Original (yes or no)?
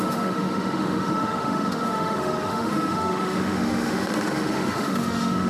no